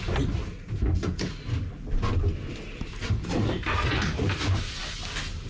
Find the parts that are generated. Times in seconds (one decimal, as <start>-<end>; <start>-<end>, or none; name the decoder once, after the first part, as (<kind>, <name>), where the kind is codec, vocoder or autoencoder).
none